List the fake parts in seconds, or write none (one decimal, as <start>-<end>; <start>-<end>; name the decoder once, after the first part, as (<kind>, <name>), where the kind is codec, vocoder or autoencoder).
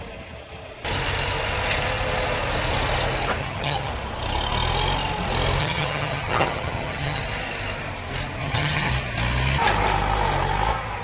3.4-3.9 (vocoder, HiFi-GAN); 5.6-7.2; 8.4-8.9